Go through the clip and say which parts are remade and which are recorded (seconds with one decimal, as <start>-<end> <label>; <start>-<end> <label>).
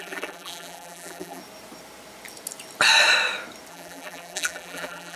0.0-1.4 remade; 1.4-3.7 recorded; 3.7-5.2 remade